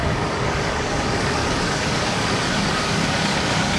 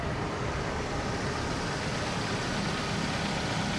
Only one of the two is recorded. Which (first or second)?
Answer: second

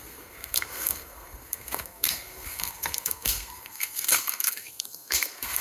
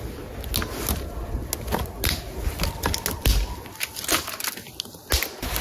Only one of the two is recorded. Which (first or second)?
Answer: second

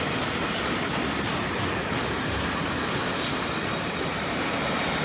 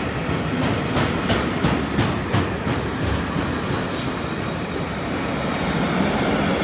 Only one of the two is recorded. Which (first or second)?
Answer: second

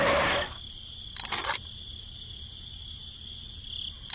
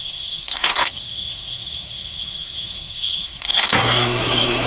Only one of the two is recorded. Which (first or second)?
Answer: first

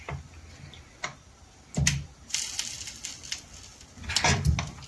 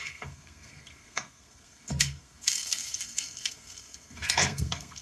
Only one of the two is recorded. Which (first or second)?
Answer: first